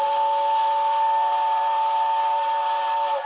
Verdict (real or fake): real